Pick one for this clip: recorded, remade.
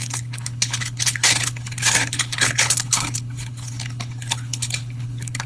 remade